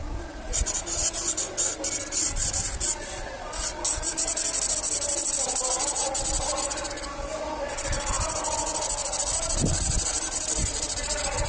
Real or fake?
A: real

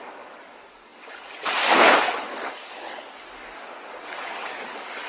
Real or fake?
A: fake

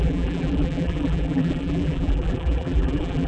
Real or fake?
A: fake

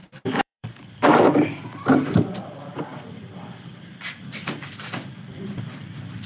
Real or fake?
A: fake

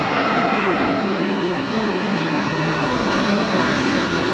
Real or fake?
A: fake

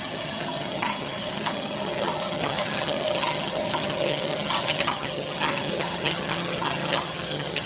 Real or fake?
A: fake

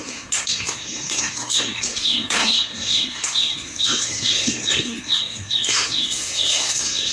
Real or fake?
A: fake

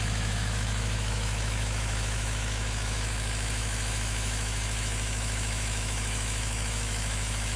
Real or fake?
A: fake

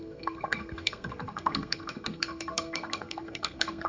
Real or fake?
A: fake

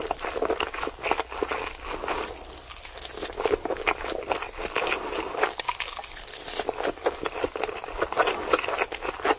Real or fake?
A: real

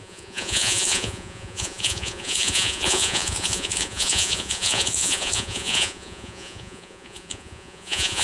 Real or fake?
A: fake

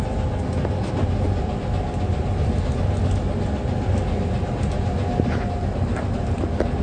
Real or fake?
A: real